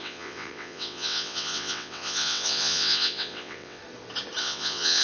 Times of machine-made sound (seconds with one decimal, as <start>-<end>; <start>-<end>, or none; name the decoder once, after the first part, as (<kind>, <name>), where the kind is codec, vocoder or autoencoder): 0.0-3.8 (vocoder, WaveNeXt); 4.4-5.0